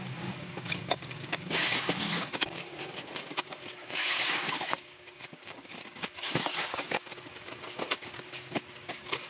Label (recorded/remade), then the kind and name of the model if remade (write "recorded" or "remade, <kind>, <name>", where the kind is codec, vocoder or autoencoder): remade, codec, DAC